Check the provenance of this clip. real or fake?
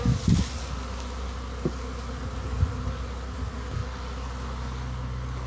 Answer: real